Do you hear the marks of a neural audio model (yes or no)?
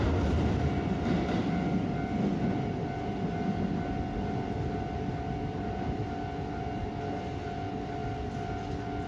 no